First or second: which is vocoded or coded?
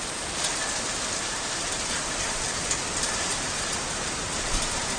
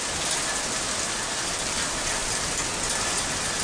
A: first